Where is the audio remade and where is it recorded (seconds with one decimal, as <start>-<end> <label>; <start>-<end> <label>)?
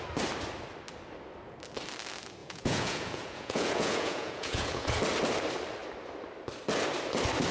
0.0-2.4 recorded; 2.4-5.0 remade; 5.0-7.5 recorded